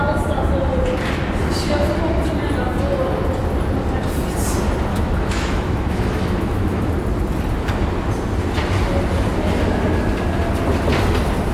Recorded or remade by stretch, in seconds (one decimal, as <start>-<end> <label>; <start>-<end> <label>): 0.0-4.9 recorded; 4.9-6.9 remade; 6.9-11.5 recorded